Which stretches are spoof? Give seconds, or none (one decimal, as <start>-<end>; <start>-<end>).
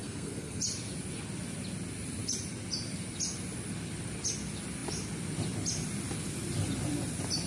0.0-0.6